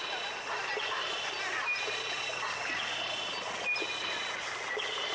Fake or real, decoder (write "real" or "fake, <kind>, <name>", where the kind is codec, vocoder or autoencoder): real